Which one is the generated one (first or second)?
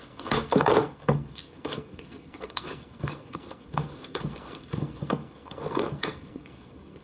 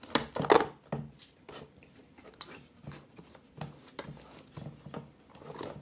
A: first